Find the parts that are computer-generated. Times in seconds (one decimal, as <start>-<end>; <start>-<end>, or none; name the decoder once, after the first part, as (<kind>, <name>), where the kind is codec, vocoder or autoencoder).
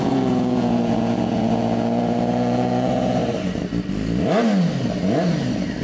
0.0-3.2 (vocoder, Vocos)